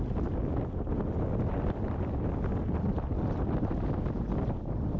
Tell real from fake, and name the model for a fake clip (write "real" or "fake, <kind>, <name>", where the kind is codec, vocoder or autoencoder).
real